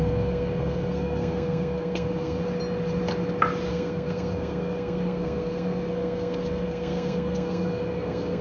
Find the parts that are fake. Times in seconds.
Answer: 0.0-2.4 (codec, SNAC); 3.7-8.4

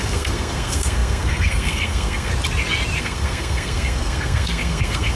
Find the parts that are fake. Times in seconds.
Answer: 0.0-2.3 (codec, SNAC); 3.0-5.2

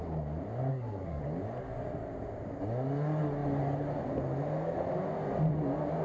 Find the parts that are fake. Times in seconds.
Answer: 0.7-1.2 (codec, SNAC)